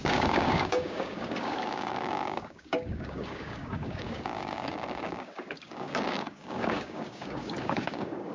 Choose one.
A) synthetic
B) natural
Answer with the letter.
A